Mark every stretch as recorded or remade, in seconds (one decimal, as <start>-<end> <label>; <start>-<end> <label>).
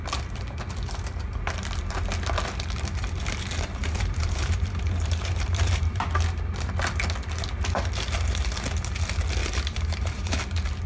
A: 0.0-3.8 recorded; 3.8-6.0 remade; 6.0-9.4 recorded; 9.4-10.4 remade; 10.4-10.9 recorded